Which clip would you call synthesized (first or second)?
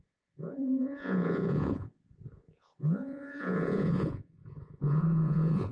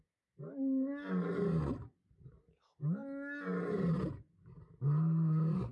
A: first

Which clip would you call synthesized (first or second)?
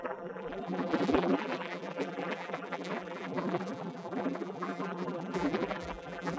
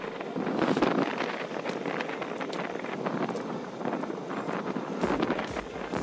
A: first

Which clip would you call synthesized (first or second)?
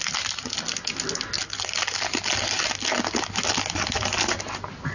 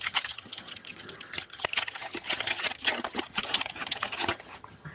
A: second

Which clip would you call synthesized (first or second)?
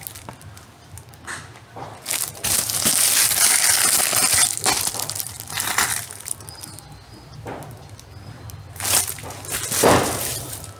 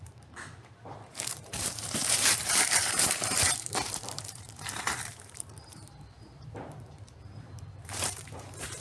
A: second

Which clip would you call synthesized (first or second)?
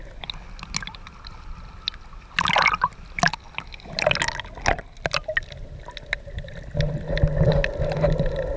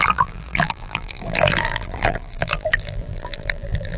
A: second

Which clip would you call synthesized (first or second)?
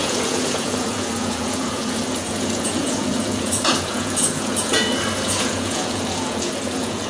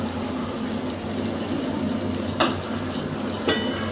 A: first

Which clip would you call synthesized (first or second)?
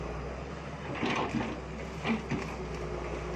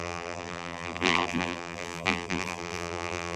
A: second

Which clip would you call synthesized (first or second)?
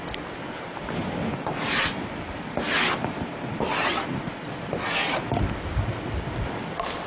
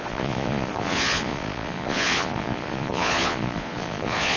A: second